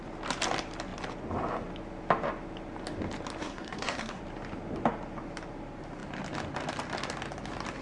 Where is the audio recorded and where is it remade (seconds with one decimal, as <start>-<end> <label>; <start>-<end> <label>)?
0.0-3.4 recorded; 3.4-4.2 remade; 4.2-7.8 recorded